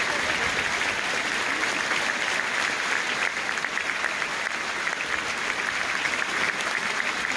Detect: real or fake real